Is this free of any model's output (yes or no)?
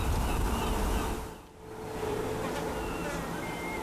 yes